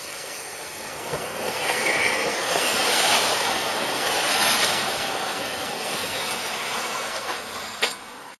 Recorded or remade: remade